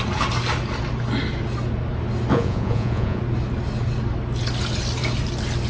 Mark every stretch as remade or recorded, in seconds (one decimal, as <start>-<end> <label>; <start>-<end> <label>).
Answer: 0.0-2.3 recorded; 2.3-3.2 remade; 3.2-5.7 recorded